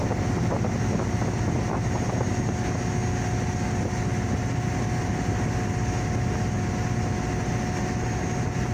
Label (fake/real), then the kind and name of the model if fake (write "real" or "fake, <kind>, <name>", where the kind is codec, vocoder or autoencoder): real